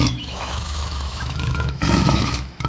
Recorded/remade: remade